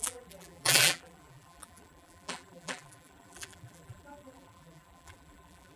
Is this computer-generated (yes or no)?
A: yes